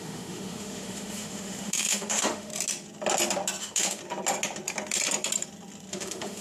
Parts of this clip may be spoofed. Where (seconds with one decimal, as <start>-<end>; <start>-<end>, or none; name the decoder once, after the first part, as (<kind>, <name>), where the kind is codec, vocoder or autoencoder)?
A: 0.0-2.5 (autoencoder, DAC-VAE); 3.6-4.0; 5.9-6.4